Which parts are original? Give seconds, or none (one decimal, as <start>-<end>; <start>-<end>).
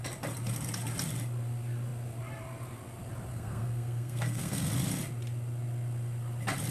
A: 0.0-3.3; 4.7-6.7